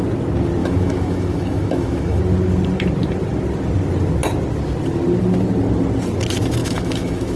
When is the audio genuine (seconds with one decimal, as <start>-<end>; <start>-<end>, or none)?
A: 0.0-0.6; 2.2-6.6

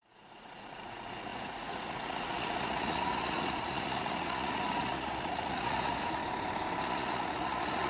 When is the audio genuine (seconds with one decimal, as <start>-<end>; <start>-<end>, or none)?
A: 6.2-6.8

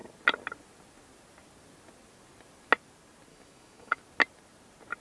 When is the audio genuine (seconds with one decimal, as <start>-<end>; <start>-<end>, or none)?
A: 0.0-3.3; 4.0-5.0